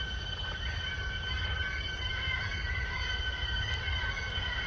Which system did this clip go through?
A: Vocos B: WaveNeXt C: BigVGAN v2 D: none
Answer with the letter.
D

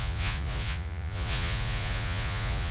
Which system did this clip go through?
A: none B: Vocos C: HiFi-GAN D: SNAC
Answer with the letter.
B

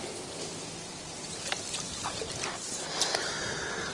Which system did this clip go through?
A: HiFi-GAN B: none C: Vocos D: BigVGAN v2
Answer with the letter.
B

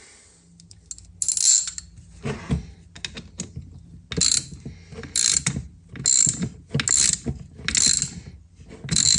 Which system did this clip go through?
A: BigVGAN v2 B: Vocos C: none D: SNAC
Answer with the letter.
C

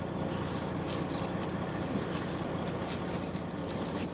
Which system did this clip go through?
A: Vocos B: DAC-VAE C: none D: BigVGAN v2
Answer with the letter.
C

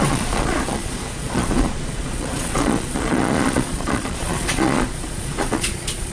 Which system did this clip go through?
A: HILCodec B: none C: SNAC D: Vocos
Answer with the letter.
D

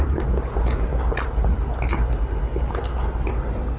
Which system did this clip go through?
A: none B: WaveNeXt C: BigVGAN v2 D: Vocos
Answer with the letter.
A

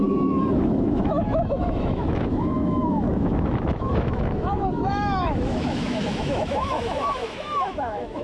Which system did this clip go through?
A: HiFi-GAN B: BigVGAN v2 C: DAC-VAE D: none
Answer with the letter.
C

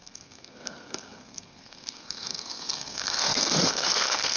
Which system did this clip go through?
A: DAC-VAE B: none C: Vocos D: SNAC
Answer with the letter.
D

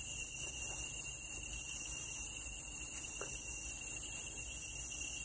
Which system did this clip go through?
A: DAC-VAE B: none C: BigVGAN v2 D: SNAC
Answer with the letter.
B